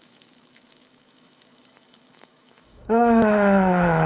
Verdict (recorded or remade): remade